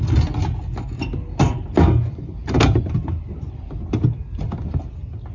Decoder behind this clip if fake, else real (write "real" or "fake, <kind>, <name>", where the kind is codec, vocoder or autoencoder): real